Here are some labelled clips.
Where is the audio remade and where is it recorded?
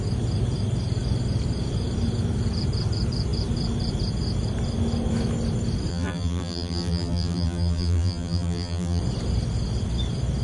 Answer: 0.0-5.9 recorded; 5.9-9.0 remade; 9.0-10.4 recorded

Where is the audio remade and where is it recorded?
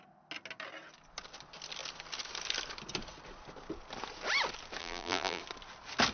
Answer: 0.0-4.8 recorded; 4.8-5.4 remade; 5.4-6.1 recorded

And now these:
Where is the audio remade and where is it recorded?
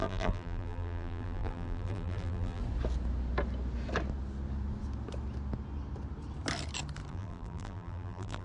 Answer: 0.0-2.6 remade; 2.6-7.1 recorded; 7.1-8.4 remade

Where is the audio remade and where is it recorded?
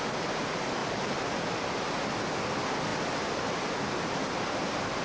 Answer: 0.0-0.8 recorded; 0.8-2.0 remade; 2.0-5.0 recorded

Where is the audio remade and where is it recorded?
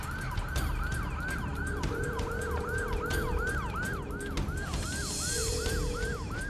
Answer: 0.0-1.5 recorded; 1.5-4.0 remade; 4.0-5.4 recorded; 5.4-6.5 remade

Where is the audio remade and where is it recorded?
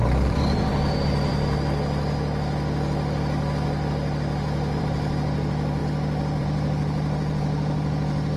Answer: 0.0-1.3 remade; 1.3-4.8 recorded; 4.8-5.8 remade; 5.8-6.4 recorded; 6.4-8.4 remade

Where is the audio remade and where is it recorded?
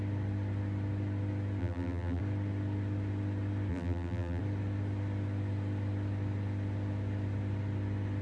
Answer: 0.0-1.6 recorded; 1.6-2.2 remade; 2.2-3.7 recorded; 3.7-4.4 remade; 4.4-8.2 recorded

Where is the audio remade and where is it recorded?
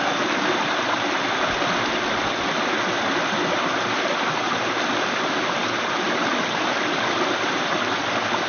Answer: 0.0-8.5 recorded